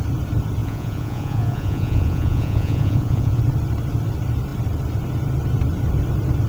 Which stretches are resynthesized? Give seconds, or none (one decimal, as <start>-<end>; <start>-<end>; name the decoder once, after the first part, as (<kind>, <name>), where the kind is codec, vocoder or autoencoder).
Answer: 0.6-3.4 (vocoder, Vocos)